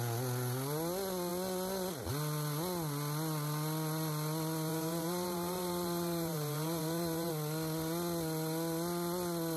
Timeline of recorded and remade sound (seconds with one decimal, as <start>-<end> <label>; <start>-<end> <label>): 0.0-4.7 recorded; 4.7-7.3 remade; 7.3-9.6 recorded